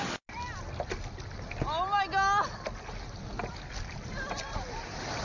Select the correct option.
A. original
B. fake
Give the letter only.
A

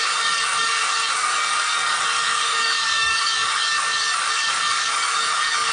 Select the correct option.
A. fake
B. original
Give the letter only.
A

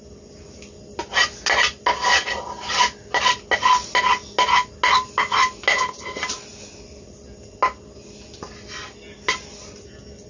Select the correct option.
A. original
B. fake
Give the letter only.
A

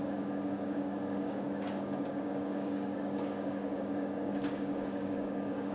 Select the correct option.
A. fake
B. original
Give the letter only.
A